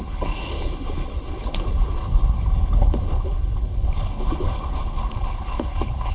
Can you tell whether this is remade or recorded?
remade